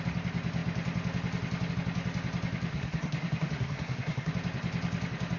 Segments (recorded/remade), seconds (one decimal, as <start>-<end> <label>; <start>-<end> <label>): 0.0-2.7 recorded; 2.7-4.3 remade; 4.3-5.4 recorded